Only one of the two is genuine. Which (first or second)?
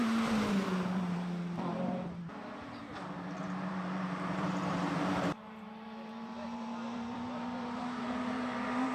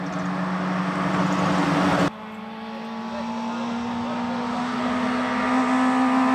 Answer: second